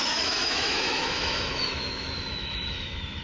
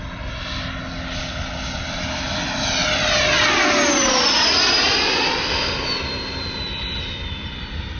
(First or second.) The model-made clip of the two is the first